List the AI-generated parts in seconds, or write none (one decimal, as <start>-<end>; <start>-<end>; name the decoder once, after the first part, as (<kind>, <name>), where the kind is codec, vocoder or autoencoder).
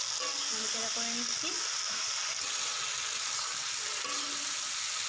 none